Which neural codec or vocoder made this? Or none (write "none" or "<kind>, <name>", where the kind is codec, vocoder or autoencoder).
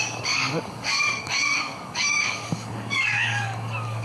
codec, DAC